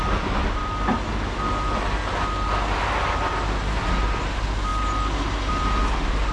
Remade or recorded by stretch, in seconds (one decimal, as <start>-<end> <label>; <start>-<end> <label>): 0.0-6.3 recorded